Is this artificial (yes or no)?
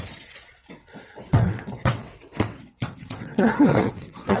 yes